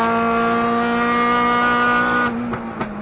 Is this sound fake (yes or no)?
no